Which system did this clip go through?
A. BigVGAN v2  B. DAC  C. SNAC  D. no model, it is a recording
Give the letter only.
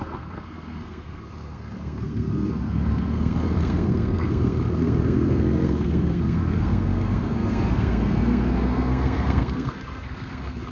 C